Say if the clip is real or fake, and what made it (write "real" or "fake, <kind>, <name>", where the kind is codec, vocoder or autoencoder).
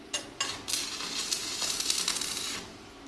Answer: real